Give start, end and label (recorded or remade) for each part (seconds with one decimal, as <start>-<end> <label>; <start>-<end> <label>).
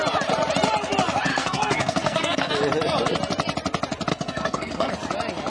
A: 0.0-1.3 recorded; 1.3-2.5 remade; 2.5-4.1 recorded; 4.1-4.9 remade; 4.9-5.5 recorded